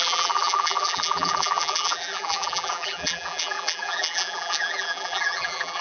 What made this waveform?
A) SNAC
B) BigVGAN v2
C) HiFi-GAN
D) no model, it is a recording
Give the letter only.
B